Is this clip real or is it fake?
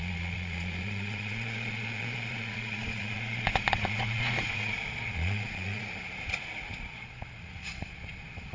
fake